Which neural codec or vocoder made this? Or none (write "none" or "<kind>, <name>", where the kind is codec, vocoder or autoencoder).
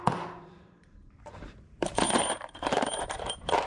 vocoder, BigVGAN v2